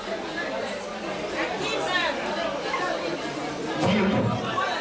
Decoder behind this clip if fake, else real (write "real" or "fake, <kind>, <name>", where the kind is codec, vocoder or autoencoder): real